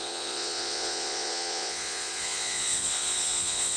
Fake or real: fake